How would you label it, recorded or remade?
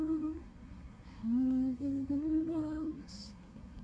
remade